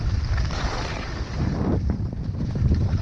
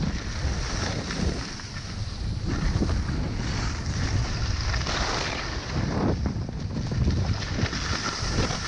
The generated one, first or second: first